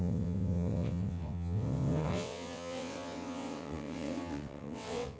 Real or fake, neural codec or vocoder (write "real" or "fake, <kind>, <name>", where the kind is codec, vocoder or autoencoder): fake, vocoder, WaveNeXt